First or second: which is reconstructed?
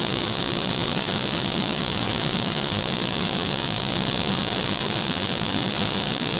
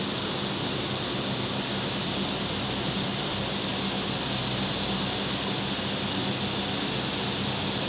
first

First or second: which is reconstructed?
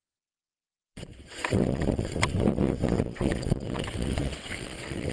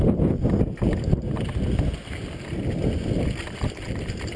first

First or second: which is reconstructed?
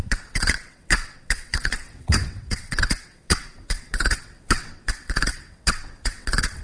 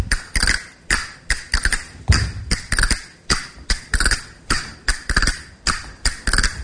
first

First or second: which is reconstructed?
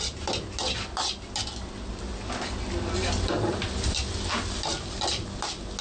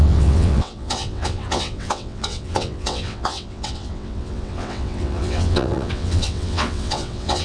second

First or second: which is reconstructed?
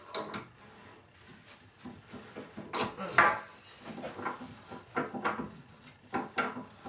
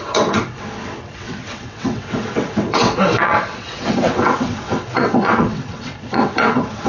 second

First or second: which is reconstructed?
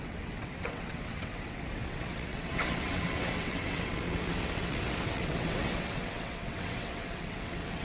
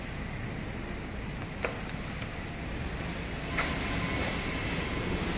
first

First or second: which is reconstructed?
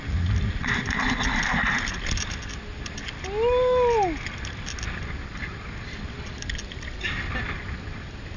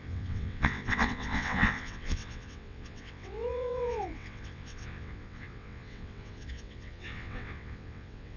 second